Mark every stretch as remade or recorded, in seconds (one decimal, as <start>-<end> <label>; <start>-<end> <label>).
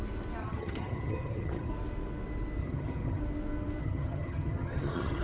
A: 0.0-0.4 recorded; 0.4-1.7 remade; 1.7-2.6 recorded; 2.6-3.2 remade; 3.2-3.8 recorded; 3.8-5.2 remade